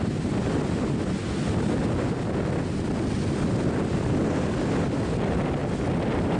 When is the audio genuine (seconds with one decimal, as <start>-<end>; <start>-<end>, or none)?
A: 0.0-6.4